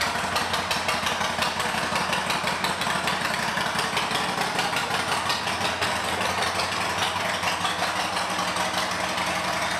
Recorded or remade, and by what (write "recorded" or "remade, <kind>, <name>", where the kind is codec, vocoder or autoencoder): recorded